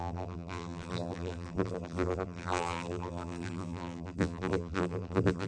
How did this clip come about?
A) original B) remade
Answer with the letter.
B